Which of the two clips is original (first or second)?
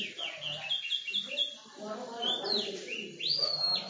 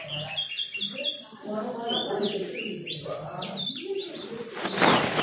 first